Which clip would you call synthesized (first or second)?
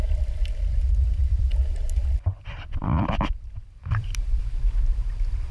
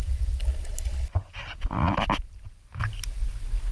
first